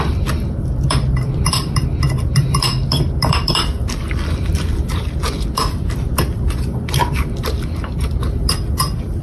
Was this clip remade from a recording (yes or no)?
yes